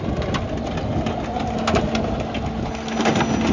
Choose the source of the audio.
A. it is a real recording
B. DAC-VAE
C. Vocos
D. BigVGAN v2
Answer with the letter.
A